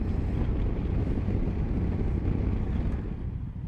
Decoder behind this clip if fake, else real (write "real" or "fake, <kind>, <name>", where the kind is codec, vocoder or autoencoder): real